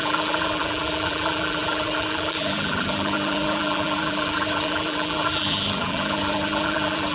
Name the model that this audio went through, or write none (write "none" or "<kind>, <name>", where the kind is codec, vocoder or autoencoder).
vocoder, BigVGAN v2